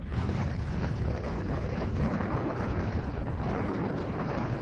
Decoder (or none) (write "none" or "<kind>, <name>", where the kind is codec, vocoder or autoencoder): codec, HILCodec